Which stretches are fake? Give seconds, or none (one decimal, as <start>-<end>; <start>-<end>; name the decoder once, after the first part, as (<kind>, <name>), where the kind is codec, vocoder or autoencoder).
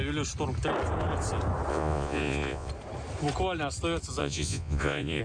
1.7-2.7 (vocoder, Vocos); 4.2-5.2